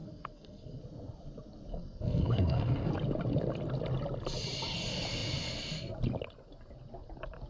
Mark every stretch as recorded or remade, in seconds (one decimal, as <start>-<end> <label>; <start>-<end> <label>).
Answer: 0.0-0.8 remade; 0.8-1.7 recorded; 1.7-2.9 remade; 2.9-7.5 recorded